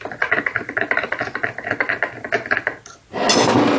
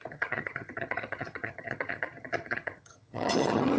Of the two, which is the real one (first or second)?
first